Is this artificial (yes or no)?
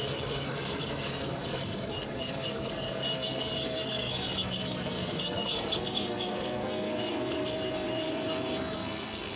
yes